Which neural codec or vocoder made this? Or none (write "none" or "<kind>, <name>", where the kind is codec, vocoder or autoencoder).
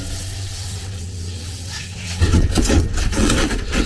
vocoder, WaveNeXt